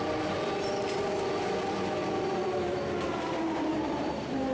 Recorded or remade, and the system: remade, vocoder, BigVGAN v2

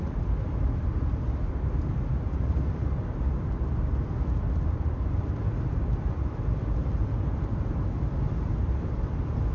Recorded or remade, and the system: remade, vocoder, BigVGAN v2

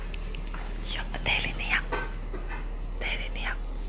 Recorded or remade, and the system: recorded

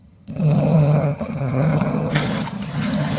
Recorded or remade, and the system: remade, vocoder, HiFi-GAN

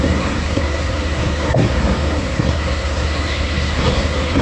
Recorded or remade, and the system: remade, codec, SNAC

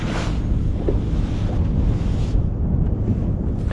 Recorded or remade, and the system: recorded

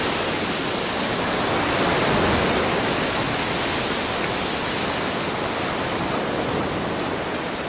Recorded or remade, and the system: recorded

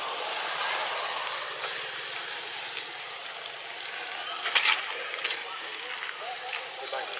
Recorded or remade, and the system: recorded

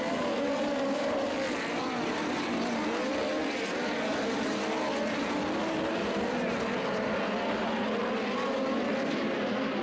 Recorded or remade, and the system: recorded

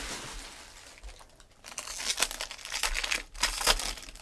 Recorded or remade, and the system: recorded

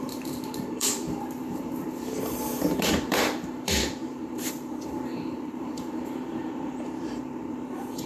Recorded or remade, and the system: remade, vocoder, BigVGAN v2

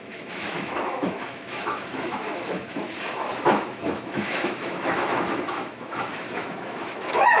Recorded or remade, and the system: remade, autoencoder, DAC-VAE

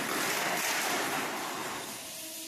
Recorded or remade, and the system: recorded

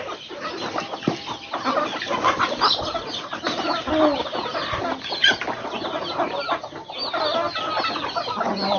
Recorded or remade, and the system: recorded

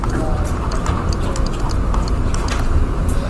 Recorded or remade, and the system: recorded